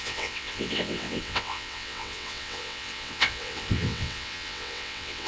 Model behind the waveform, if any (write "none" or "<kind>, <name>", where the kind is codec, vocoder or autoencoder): vocoder, WaveNeXt